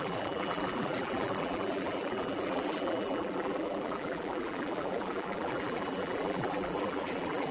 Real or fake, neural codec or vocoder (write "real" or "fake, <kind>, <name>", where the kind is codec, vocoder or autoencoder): fake, vocoder, BigVGAN v2